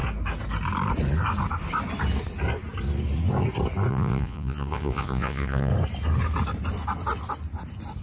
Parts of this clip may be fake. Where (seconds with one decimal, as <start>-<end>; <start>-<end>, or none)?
3.9-5.7